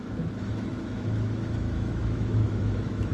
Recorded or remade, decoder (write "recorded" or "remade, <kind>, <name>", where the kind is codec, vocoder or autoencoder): remade, autoencoder, DAC-VAE